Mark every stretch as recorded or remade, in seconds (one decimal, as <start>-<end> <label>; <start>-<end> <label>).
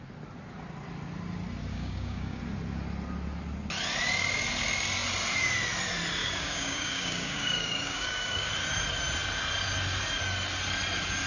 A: 0.0-1.7 recorded; 1.7-2.4 remade; 2.4-6.2 recorded; 6.2-8.5 remade; 8.5-11.3 recorded